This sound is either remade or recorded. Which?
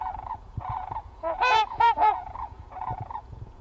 remade